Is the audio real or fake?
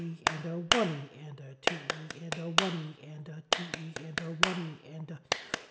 real